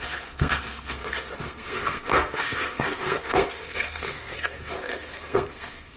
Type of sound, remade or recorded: remade